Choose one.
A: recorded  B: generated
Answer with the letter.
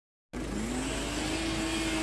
A